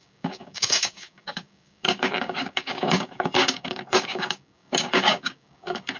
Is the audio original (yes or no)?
no